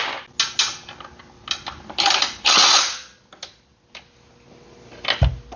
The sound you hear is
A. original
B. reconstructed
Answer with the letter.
A